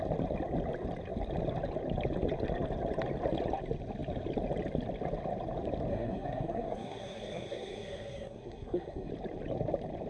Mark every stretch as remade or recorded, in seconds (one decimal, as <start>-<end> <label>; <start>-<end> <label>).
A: 0.0-5.9 recorded; 5.9-9.1 remade; 9.1-10.1 recorded